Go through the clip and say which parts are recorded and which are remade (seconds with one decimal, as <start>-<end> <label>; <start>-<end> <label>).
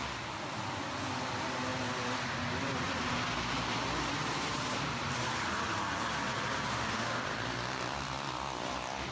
0.0-6.7 recorded; 6.7-7.2 remade; 7.2-9.1 recorded